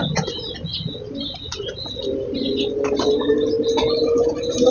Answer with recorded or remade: recorded